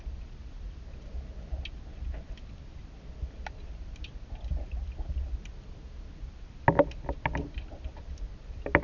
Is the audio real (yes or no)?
yes